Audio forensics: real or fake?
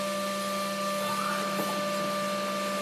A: real